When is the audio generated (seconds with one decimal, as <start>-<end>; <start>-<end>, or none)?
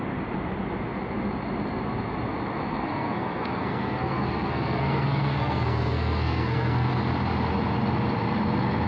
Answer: 2.6-6.9